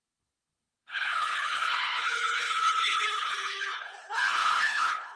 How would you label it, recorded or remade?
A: remade